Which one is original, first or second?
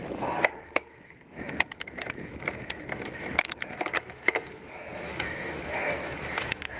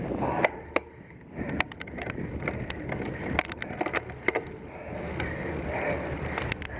second